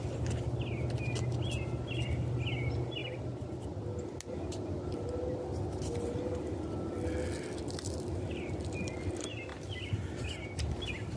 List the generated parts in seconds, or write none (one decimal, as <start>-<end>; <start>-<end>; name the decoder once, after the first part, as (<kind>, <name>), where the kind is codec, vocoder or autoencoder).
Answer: none